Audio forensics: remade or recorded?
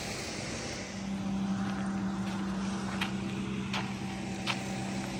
recorded